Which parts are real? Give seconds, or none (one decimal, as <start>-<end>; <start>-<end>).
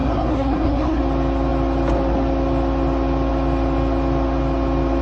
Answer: 1.0-5.0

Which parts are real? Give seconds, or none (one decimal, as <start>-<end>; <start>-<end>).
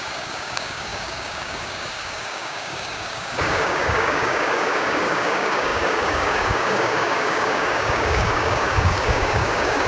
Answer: none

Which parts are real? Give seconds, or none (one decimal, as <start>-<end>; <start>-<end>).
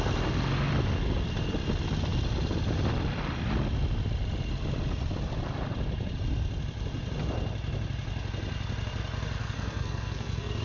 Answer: 0.0-9.4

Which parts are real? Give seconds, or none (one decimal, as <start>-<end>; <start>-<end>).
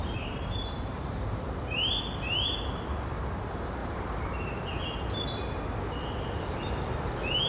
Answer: 1.9-3.8; 4.8-7.5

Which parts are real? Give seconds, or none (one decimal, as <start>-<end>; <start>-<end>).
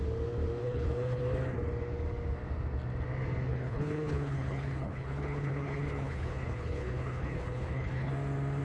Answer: 0.0-0.6; 1.2-3.5; 8.1-8.6